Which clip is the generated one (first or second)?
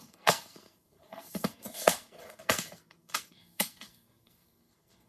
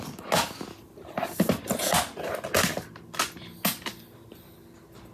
first